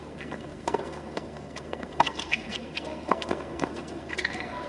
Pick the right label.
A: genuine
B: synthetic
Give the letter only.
B